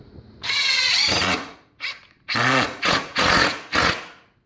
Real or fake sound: fake